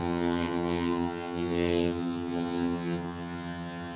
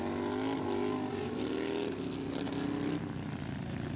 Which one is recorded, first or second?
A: second